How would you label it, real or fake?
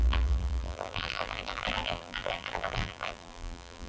fake